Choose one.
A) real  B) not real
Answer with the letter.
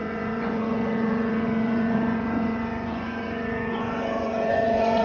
B